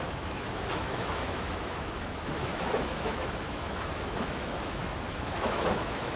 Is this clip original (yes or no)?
no